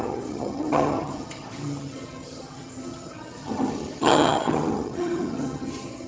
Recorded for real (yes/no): no